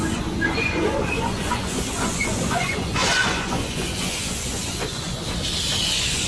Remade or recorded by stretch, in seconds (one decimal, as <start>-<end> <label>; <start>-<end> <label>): 0.0-5.2 remade; 5.2-5.8 recorded; 5.8-6.3 remade